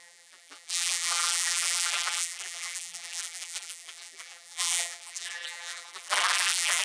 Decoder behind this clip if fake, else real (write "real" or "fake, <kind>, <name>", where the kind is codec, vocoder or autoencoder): fake, vocoder, BigVGAN v2